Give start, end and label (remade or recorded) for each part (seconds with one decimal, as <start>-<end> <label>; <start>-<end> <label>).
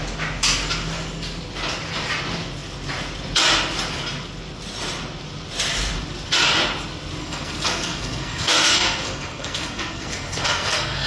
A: 0.0-7.2 recorded; 7.2-11.1 remade